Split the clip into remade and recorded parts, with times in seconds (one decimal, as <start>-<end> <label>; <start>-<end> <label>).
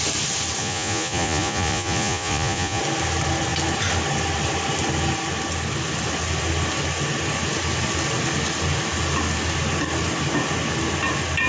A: 0.0-0.6 recorded; 0.6-2.8 remade; 2.8-11.5 recorded